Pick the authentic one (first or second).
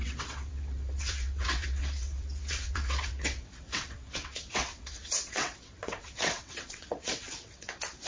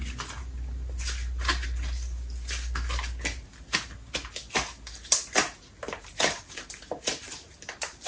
second